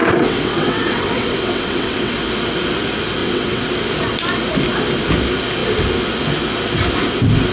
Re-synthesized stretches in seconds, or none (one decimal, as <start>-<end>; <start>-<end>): 0.0-2.1; 3.2-3.7